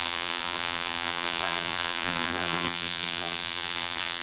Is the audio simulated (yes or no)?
yes